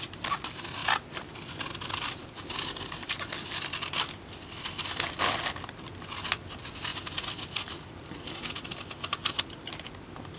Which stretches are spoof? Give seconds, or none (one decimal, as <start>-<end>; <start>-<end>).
none